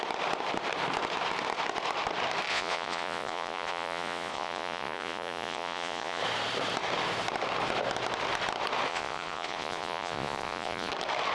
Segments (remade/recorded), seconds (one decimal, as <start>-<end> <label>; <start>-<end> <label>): 0.0-2.5 recorded; 2.5-6.2 remade; 6.2-8.9 recorded; 8.9-10.9 remade; 10.9-11.3 recorded